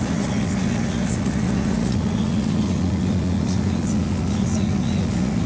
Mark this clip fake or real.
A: fake